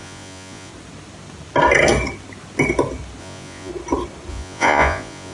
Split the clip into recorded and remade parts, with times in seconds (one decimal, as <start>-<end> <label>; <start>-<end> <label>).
0.0-0.7 remade; 0.7-3.2 recorded; 3.2-3.7 remade; 3.7-4.3 recorded; 4.3-5.3 remade